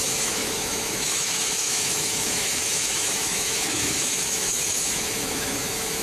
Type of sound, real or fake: fake